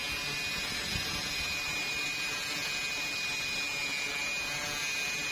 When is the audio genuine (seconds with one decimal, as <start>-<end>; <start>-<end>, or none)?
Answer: 0.0-5.3